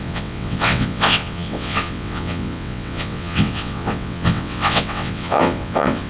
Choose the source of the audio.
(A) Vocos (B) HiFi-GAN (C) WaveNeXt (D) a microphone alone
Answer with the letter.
C